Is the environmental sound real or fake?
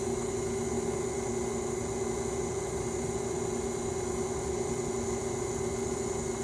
real